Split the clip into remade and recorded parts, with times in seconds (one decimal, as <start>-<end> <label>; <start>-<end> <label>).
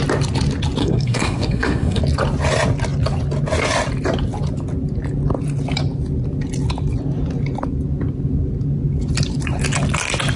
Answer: 0.0-0.8 recorded; 0.8-2.0 remade; 2.0-10.4 recorded